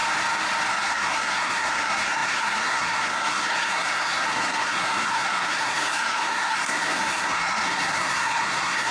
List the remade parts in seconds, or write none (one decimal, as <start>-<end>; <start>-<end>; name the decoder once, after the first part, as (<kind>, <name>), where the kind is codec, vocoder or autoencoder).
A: 0.7-8.9 (codec, SNAC)